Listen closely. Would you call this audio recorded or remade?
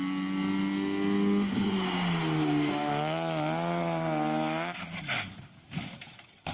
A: recorded